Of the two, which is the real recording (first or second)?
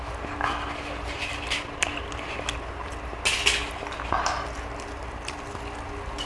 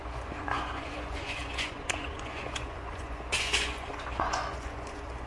first